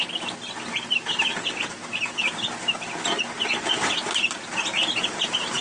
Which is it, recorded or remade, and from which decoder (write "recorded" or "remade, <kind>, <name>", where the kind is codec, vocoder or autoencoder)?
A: recorded